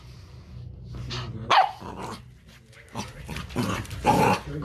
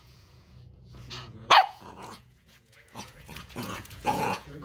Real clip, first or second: first